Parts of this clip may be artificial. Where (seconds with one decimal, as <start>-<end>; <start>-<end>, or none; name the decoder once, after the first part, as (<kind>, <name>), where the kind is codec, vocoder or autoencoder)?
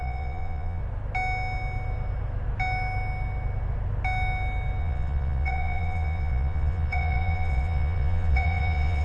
0.0-0.8 (vocoder, Vocos); 4.8-9.0